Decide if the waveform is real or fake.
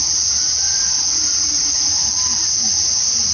fake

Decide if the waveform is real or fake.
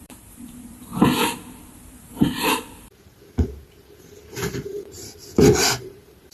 fake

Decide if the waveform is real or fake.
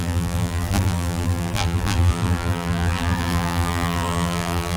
fake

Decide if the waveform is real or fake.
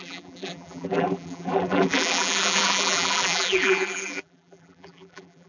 fake